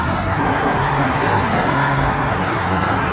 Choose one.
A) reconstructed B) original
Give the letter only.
A